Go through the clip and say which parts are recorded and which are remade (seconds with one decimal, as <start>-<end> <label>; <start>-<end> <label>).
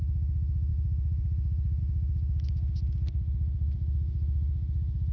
0.0-0.7 recorded; 0.7-1.8 remade; 1.8-5.1 recorded